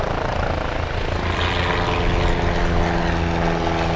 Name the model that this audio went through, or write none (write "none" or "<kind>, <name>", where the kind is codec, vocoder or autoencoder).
none